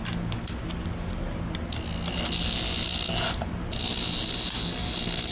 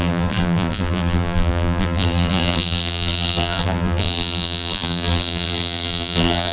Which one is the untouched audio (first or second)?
first